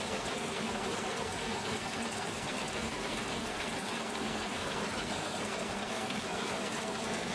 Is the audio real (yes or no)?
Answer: no